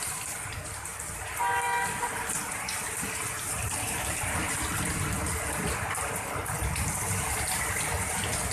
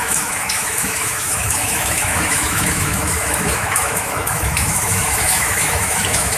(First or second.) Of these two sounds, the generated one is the second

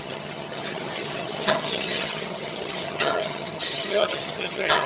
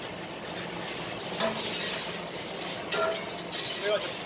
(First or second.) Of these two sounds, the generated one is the first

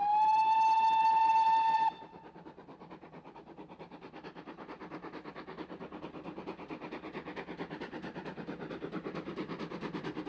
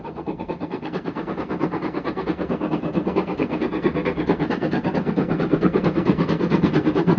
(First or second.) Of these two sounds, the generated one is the second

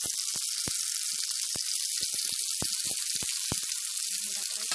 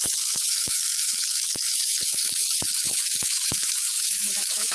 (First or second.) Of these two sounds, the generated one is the second